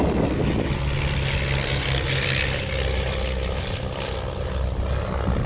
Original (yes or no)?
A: yes